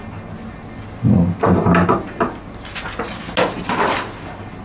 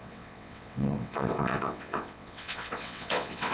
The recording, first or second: first